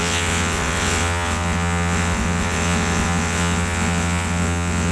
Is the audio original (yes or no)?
no